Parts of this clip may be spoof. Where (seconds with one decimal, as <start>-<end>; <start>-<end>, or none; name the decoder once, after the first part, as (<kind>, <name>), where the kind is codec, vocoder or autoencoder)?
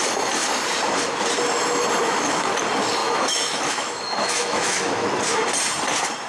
2.0-2.5 (autoencoder, DAC-VAE); 3.0-5.2